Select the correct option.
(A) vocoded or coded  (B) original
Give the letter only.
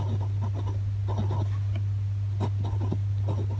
B